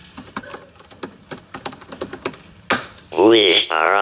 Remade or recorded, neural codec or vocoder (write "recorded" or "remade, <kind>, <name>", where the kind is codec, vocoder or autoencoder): recorded